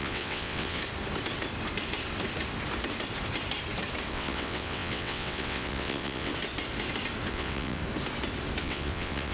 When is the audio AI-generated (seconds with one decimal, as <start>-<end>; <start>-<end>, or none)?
0.0-0.8; 4.1-6.3; 7.3-7.8; 8.6-9.3

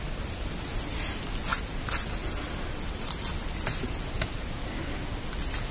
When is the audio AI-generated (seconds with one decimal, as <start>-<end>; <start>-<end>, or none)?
none

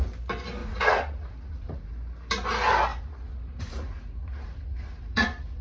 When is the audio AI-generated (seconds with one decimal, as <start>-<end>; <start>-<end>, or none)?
0.6-1.9; 2.9-5.6